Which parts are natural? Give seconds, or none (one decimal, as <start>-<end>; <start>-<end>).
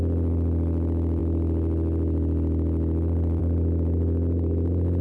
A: 0.0-5.0